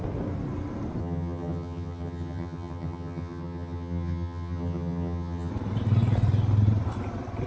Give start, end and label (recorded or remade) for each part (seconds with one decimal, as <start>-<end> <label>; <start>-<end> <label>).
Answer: 0.0-1.0 recorded; 1.0-5.5 remade; 5.5-7.5 recorded